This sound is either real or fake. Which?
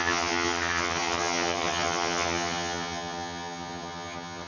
fake